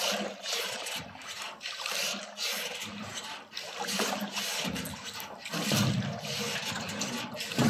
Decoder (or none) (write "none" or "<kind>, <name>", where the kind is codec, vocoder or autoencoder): none